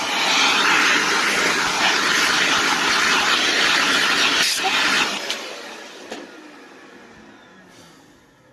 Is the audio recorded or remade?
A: recorded